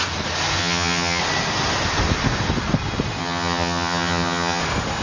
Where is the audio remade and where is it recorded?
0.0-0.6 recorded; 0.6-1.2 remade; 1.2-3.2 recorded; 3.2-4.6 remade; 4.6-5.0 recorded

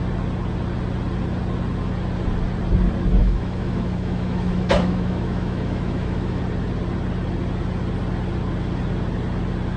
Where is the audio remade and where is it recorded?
0.0-3.2 recorded; 3.2-6.4 remade; 6.4-9.8 recorded

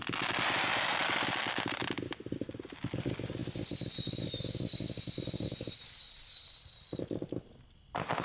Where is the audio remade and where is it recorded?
0.0-8.2 recorded

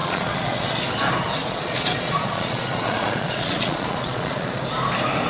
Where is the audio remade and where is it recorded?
0.0-0.8 remade; 0.8-1.4 recorded; 1.4-4.6 remade; 4.6-5.3 recorded

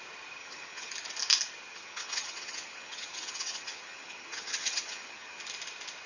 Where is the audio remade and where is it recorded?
0.0-0.4 recorded; 0.4-0.9 remade; 0.9-1.7 recorded; 1.7-5.4 remade; 5.4-6.1 recorded